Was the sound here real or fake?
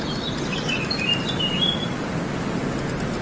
real